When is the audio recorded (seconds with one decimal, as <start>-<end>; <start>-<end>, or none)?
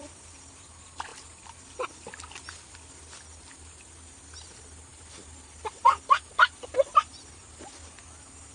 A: 0.0-4.9; 7.3-8.5